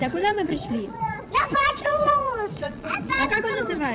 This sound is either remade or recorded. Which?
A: remade